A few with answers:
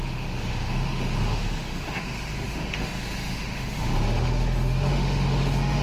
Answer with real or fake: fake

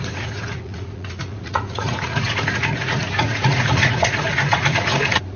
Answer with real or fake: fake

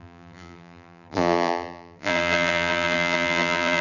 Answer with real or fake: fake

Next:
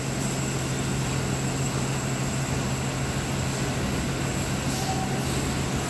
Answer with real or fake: real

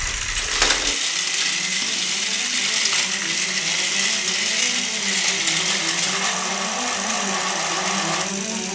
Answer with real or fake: real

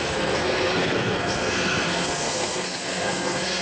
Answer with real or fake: fake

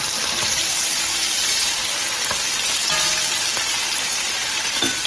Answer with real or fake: fake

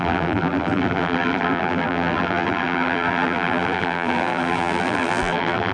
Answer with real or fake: fake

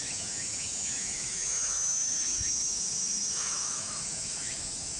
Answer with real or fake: fake